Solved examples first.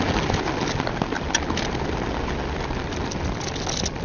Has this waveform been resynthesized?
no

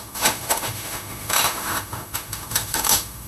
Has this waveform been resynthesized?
yes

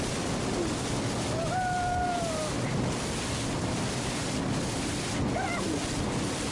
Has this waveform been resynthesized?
no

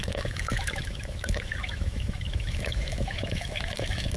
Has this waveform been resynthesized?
yes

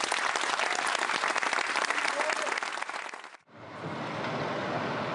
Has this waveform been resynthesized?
no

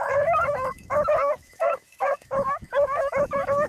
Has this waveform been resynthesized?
yes